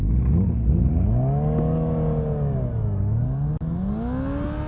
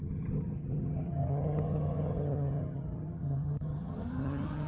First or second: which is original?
first